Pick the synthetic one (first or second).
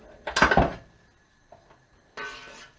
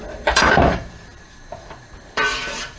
second